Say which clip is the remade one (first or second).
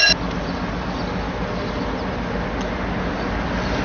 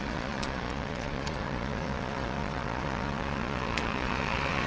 second